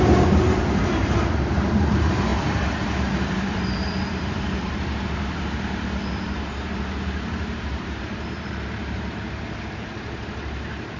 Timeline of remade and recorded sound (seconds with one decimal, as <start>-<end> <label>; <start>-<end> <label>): 0.0-2.3 remade; 2.3-3.2 recorded; 3.2-11.0 remade